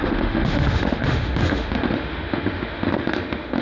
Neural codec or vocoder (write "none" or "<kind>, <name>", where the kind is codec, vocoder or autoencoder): autoencoder, DAC-VAE